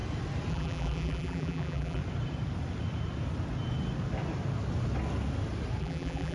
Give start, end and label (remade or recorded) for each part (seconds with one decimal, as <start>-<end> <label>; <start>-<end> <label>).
0.0-0.5 recorded; 0.5-2.0 remade; 2.0-5.8 recorded; 5.8-6.3 remade